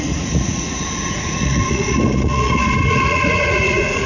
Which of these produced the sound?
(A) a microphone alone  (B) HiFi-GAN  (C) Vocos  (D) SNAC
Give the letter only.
C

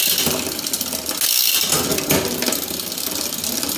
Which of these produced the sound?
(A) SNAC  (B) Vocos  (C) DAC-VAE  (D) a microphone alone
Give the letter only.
D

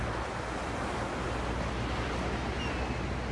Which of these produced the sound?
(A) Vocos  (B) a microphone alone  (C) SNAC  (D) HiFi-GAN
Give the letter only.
B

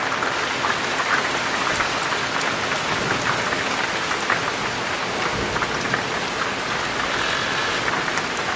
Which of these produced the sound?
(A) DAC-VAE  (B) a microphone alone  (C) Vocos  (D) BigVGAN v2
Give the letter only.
B